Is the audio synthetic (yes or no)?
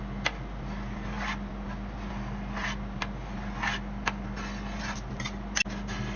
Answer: no